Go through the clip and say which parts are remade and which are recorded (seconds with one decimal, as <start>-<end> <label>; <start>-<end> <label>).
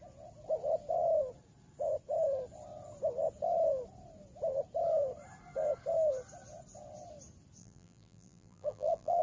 0.0-7.6 recorded; 7.6-9.2 remade